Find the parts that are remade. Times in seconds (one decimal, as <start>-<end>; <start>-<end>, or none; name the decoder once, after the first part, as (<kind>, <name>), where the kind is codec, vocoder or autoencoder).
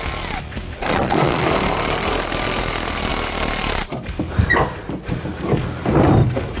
0.9-1.4 (vocoder, Vocos)